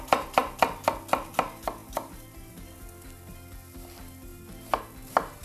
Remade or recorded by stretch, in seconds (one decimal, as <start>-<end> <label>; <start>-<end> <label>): 0.0-5.4 recorded